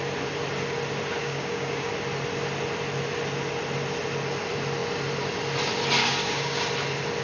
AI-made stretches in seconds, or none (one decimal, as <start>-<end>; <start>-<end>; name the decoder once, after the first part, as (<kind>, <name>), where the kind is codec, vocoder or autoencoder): 1.2-1.9 (codec, DAC); 6.0-6.6